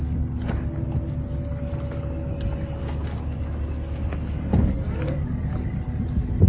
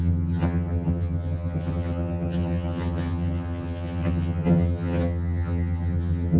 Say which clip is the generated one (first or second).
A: second